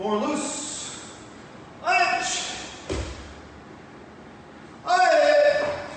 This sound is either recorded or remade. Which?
recorded